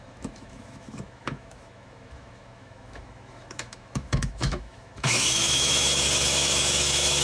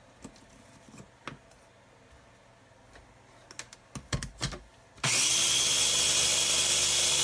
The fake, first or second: first